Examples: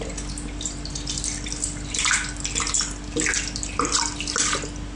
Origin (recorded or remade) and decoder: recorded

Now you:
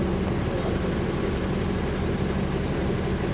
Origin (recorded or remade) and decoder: recorded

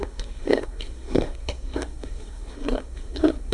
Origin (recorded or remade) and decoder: remade, codec, SNAC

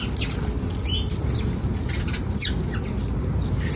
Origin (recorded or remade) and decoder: recorded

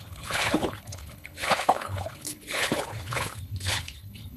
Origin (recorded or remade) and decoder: remade, codec, HILCodec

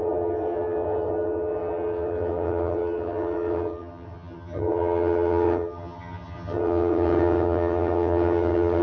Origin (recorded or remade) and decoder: remade, vocoder, HiFi-GAN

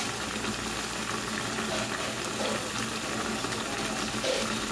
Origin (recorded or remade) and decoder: recorded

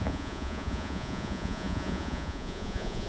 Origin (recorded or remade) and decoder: remade, vocoder, Vocos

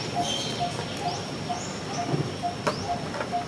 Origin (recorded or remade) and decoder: recorded